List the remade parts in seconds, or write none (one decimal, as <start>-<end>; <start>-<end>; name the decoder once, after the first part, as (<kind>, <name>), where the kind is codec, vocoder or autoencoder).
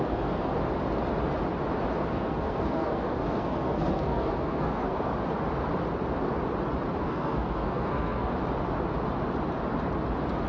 0.0-0.5 (codec, SNAC); 2.1-5.1; 7.0-8.3